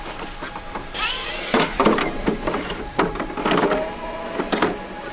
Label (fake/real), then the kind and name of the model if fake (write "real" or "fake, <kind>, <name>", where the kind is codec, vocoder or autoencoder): real